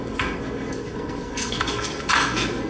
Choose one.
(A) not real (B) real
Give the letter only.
A